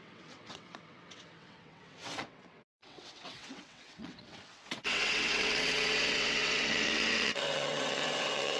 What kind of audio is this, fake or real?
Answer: fake